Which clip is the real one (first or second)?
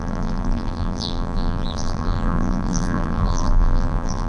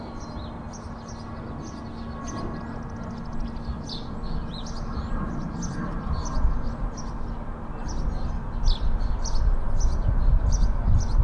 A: second